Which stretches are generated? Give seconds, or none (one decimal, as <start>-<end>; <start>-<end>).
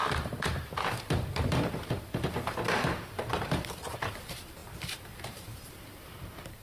0.0-6.6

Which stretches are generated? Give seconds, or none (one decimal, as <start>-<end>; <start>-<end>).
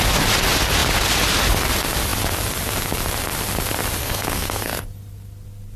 4.0-4.8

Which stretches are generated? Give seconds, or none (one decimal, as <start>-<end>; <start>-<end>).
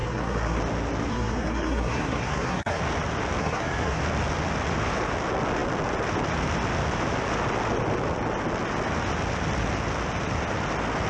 0.0-0.6; 1.1-2.8; 3.4-4.0